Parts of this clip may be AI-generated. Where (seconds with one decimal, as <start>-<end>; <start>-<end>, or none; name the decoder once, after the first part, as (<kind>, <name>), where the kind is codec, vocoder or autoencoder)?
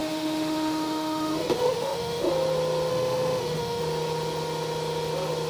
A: 0.0-2.3 (autoencoder, DAC-VAE); 2.9-3.8